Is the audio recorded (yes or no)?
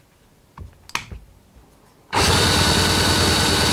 yes